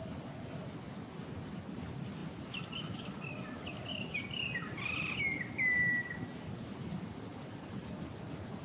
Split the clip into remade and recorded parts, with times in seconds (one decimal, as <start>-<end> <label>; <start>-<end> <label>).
0.0-8.6 recorded